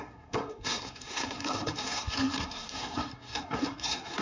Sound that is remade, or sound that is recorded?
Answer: remade